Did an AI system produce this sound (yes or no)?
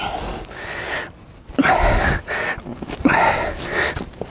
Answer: no